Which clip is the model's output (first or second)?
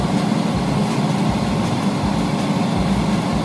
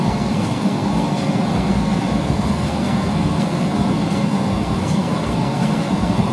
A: second